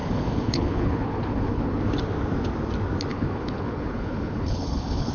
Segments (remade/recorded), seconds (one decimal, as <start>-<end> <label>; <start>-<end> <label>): 0.0-1.8 remade; 1.8-3.1 recorded; 3.1-5.1 remade